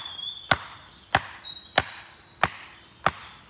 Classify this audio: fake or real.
real